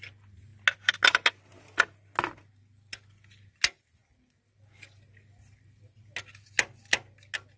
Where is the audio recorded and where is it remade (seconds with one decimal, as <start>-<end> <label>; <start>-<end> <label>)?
0.0-7.6 recorded